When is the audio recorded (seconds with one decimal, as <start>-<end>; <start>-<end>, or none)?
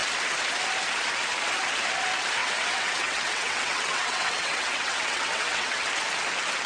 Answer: 0.0-2.4; 5.9-6.7